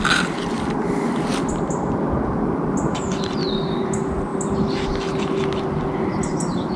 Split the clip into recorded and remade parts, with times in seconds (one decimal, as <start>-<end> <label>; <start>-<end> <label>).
0.0-6.8 recorded